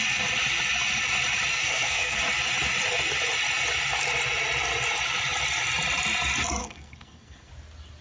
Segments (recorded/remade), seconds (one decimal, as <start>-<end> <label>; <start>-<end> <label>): 0.0-1.5 recorded; 1.5-2.2 remade; 2.2-6.6 recorded; 6.6-7.5 remade; 7.5-8.0 recorded

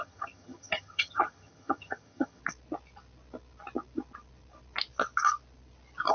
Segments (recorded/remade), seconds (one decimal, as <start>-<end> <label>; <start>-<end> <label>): 0.0-2.4 remade; 2.4-6.1 recorded

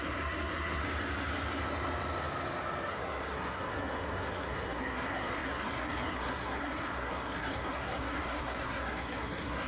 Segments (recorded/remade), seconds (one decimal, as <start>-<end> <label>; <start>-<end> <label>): 0.0-0.8 remade; 0.8-2.9 recorded; 2.9-9.7 remade

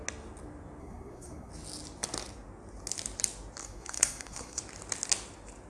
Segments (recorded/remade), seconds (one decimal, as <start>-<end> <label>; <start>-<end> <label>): 0.0-0.8 recorded; 0.8-1.5 remade; 1.5-3.6 recorded; 3.6-4.6 remade; 4.6-5.7 recorded

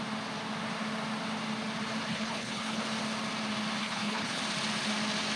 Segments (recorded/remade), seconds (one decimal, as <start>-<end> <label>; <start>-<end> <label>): 0.0-2.1 recorded; 2.1-2.8 remade; 2.8-3.8 recorded; 3.8-4.4 remade; 4.4-5.4 recorded